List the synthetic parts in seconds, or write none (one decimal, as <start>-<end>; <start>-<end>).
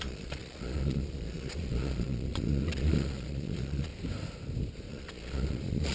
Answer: 0.0-3.9; 4.9-5.9